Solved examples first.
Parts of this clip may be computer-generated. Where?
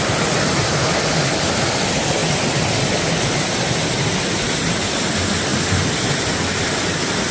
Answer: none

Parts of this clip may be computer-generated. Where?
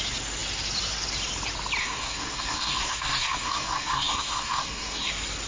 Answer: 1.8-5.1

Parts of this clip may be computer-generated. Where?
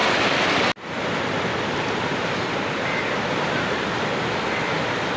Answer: none